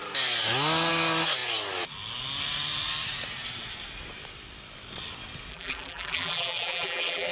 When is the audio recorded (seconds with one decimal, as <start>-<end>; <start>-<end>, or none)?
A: 0.0-5.5